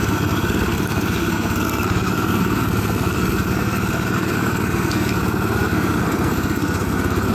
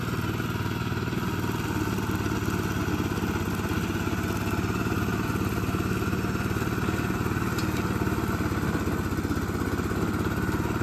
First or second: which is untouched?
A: second